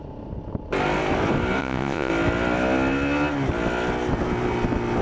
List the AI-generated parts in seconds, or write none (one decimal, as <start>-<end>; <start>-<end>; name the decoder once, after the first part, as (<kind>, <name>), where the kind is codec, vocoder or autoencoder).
1.6-2.1 (vocoder, Vocos)